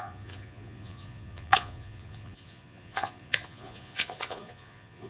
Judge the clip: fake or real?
fake